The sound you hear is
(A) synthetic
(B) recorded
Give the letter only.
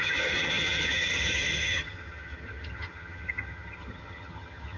A